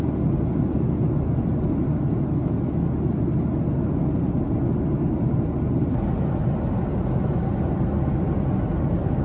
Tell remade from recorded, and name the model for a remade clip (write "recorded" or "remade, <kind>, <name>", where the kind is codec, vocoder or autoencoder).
recorded